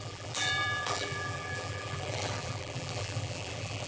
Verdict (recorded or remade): remade